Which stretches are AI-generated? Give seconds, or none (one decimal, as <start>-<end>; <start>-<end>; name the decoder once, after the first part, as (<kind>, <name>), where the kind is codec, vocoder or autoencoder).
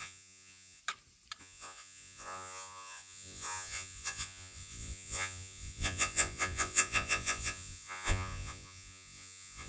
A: 0.0-0.8 (vocoder, Vocos); 1.4-9.7